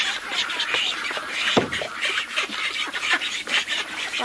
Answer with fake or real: fake